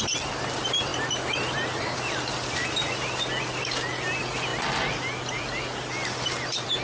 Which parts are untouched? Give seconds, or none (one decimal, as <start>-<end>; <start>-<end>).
0.0-6.8